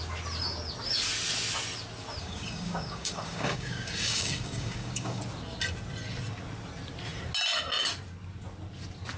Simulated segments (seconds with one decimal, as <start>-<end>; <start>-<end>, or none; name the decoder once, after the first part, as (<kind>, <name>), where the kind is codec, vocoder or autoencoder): 2.2-5.2 (codec, DAC)